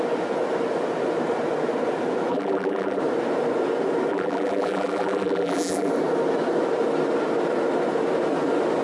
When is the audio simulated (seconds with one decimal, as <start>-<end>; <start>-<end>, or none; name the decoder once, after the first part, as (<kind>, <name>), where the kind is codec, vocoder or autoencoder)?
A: 2.3-3.0 (vocoder, BigVGAN v2); 4.1-5.9